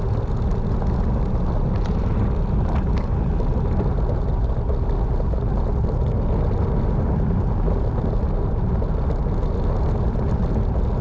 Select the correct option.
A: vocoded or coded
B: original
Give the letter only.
B